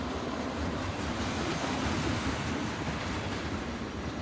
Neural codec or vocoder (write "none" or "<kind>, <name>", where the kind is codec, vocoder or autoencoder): none